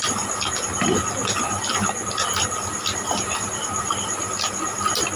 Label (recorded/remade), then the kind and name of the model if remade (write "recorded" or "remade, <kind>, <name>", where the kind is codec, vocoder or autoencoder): recorded